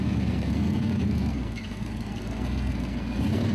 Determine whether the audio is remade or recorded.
remade